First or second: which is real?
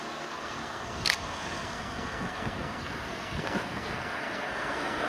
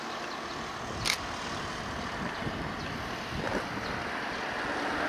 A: second